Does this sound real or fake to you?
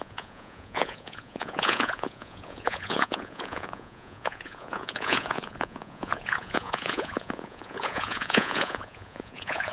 fake